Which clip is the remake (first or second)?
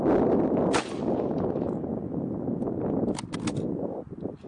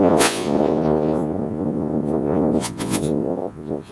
second